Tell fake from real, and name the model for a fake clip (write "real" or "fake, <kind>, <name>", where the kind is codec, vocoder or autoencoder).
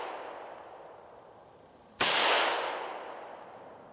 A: real